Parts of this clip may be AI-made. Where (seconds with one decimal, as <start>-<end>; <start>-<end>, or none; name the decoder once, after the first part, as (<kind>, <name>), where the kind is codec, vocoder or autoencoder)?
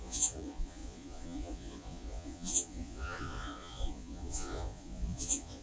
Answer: 0.0-5.6 (vocoder, Vocos)